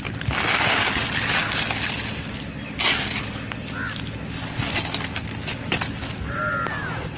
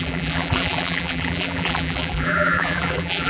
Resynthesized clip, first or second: second